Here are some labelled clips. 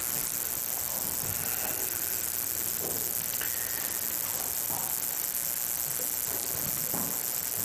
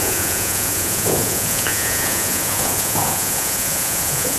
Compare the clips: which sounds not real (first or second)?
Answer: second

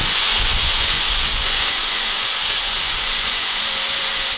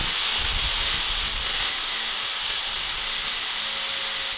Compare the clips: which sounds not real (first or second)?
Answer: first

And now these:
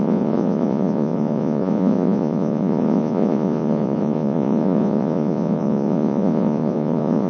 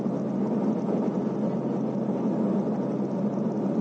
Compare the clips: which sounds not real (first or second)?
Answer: first